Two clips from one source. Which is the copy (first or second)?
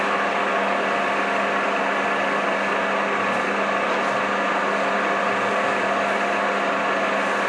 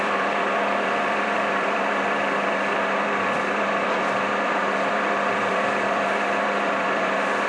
second